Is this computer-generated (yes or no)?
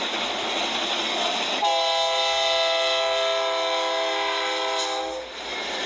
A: no